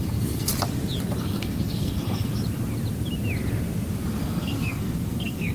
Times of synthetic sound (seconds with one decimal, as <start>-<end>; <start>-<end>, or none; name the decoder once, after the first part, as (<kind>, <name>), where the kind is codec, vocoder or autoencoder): 0.0-0.5 (codec, SNAC); 1.2-2.3; 4.2-5.5